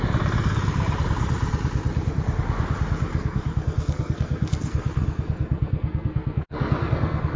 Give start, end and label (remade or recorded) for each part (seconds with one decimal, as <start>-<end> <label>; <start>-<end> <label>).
0.0-3.1 recorded; 3.1-7.4 remade